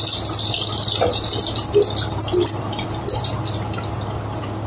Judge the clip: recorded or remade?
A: recorded